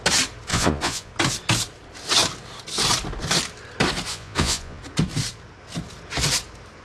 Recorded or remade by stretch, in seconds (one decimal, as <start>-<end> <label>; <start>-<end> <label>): 0.0-0.5 recorded; 0.5-1.1 remade; 1.1-4.1 recorded; 4.1-4.8 remade; 4.8-6.8 recorded